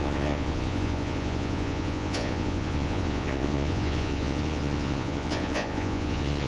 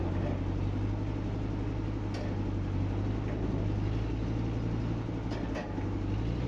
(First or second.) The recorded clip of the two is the second